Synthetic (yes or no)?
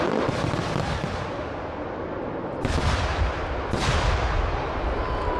no